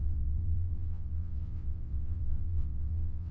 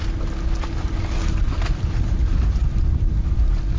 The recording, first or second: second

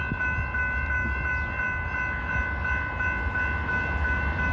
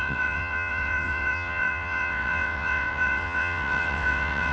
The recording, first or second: first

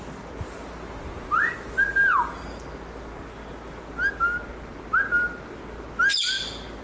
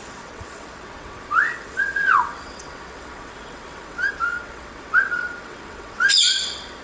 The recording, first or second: first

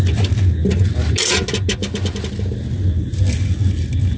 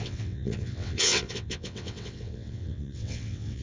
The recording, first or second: first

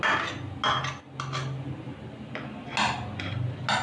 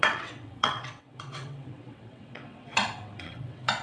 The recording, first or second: first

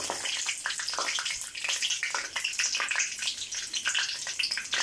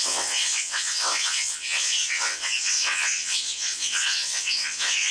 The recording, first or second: first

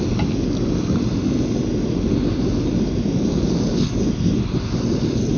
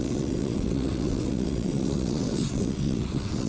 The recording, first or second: first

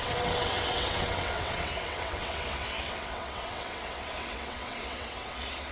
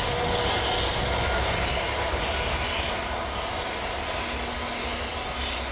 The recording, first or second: second